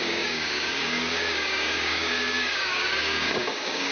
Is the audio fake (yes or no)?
yes